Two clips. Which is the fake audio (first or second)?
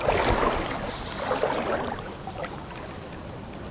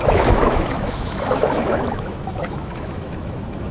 second